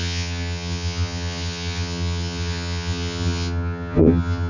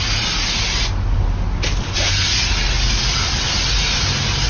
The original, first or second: second